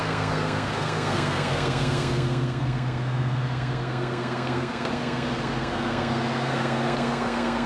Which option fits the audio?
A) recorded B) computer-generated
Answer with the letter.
B